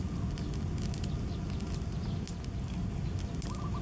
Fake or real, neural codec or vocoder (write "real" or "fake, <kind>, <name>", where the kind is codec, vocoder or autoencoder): real